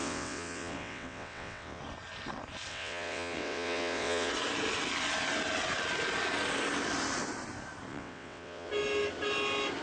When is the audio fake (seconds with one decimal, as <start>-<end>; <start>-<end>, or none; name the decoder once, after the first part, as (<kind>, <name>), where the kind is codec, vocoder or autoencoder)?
0.0-1.8 (vocoder, WaveNeXt); 2.7-4.3; 7.9-8.7